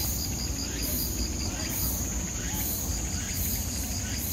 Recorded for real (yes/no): no